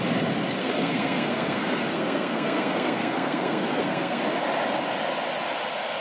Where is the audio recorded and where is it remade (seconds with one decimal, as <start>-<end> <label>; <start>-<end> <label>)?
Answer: 0.0-0.6 recorded; 0.6-4.2 remade; 4.2-6.0 recorded